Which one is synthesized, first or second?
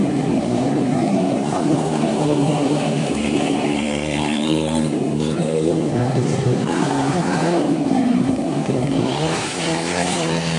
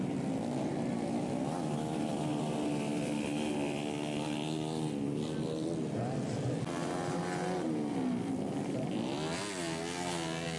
first